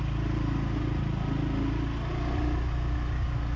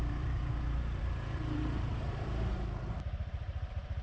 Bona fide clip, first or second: first